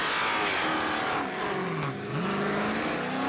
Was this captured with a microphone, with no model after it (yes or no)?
yes